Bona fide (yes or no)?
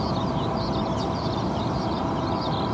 yes